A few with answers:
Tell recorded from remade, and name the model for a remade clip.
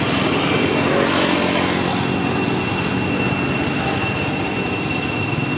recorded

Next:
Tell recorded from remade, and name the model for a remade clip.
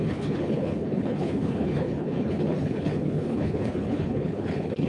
remade, codec, HILCodec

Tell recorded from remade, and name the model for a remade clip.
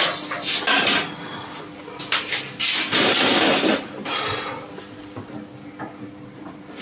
recorded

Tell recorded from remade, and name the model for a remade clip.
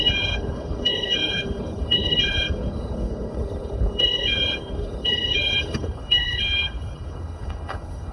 remade, codec, HILCodec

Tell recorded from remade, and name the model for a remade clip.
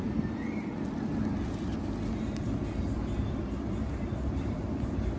recorded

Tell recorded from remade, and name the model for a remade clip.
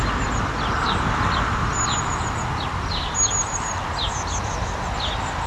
recorded